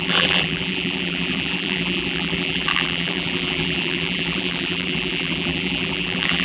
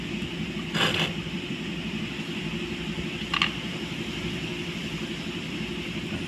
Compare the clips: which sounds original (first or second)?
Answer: second